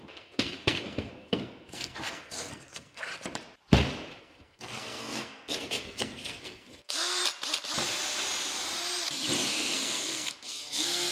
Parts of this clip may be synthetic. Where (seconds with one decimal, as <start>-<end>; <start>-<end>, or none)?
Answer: 0.0-3.1; 4.2-7.2; 9.5-11.1